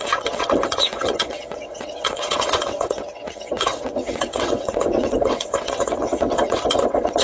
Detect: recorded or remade remade